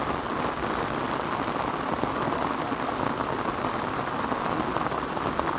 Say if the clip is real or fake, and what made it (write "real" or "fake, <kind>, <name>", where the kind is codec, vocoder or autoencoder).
real